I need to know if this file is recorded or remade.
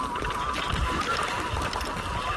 recorded